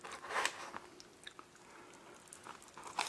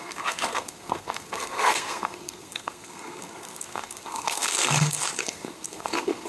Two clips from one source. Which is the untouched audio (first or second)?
first